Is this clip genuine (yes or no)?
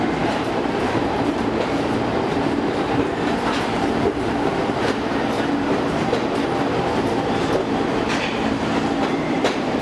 no